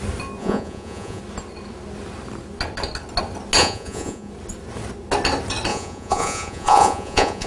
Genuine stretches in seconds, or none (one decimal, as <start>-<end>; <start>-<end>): 0.0-0.4; 1.2-3.6; 4.3-5.7